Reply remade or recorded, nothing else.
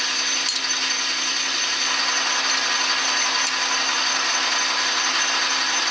recorded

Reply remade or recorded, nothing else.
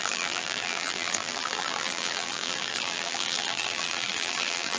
remade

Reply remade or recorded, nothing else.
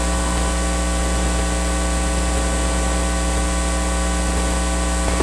recorded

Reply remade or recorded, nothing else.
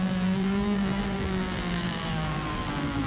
remade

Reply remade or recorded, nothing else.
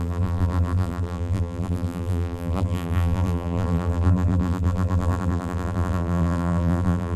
remade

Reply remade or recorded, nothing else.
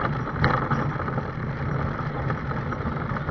recorded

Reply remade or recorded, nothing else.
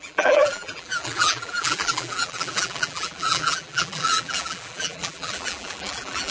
remade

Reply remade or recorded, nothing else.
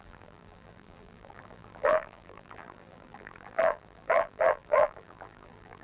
remade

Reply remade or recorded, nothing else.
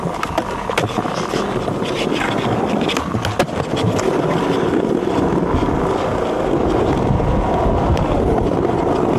recorded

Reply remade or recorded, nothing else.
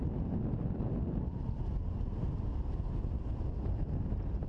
recorded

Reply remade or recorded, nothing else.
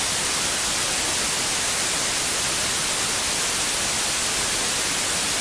recorded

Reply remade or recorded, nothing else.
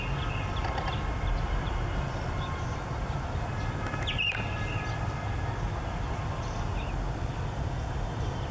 recorded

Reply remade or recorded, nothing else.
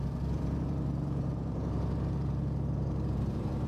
remade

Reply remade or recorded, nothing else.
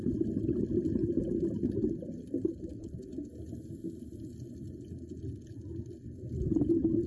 recorded